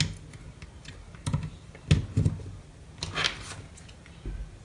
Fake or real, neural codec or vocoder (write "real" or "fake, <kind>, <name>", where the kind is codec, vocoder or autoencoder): real